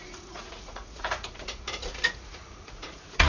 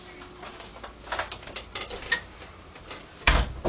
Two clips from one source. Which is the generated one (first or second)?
first